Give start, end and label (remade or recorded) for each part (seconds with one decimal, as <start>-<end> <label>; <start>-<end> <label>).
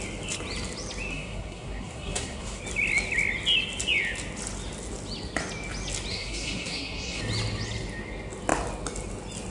0.0-1.1 recorded; 1.1-2.6 remade; 2.6-6.1 recorded; 6.1-7.2 remade; 7.2-9.5 recorded